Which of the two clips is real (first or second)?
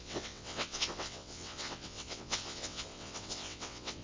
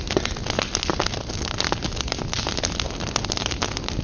second